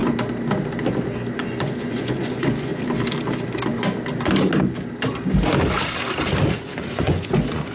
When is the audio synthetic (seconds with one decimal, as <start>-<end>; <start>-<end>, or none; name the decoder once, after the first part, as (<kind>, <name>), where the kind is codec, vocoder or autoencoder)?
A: 1.3-2.7 (vocoder, Vocos); 6.5-7.7